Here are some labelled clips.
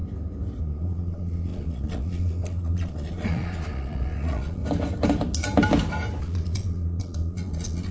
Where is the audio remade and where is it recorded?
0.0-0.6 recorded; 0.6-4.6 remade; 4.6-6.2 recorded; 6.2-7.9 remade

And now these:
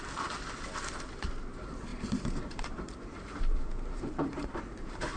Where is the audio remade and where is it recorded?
0.0-1.9 recorded; 1.9-5.2 remade

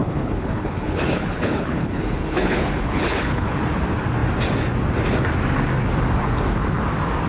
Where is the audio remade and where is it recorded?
0.0-3.6 remade; 3.6-7.3 recorded

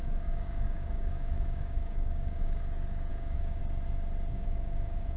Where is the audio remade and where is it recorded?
0.0-2.6 remade; 2.6-3.1 recorded; 3.1-3.6 remade; 3.6-4.3 recorded; 4.3-5.2 remade

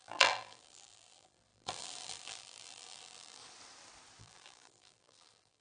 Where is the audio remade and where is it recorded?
0.0-3.4 remade; 3.4-4.2 recorded; 4.2-5.6 remade